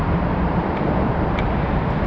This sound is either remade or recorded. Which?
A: recorded